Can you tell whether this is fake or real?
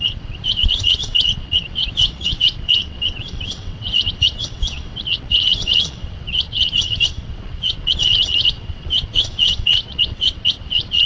fake